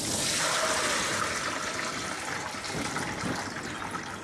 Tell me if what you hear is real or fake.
real